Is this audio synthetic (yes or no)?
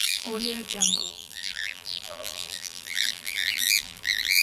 yes